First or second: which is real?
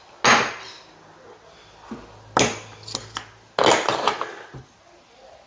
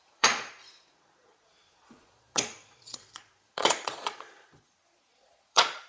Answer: first